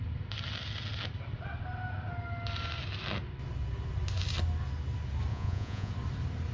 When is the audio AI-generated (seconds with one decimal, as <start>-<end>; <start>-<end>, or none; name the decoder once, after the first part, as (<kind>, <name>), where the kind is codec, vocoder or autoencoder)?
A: 5.3-5.9 (vocoder, Vocos)